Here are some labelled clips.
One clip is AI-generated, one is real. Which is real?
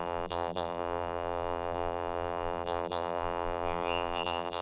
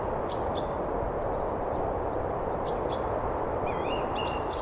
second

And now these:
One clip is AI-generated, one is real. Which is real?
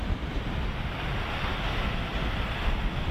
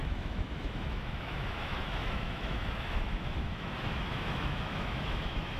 first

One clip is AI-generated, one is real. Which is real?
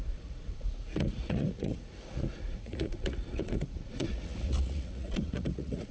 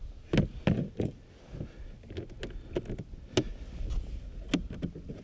second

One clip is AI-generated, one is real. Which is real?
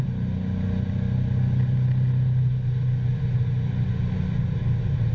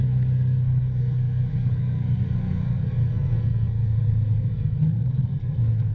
first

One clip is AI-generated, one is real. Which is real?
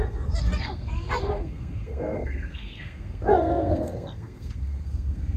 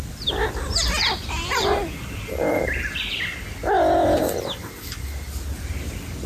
second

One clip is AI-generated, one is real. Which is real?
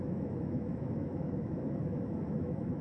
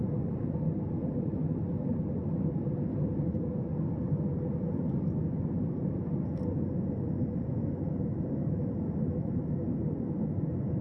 second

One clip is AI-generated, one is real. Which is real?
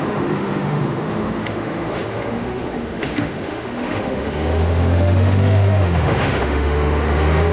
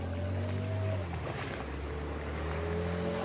second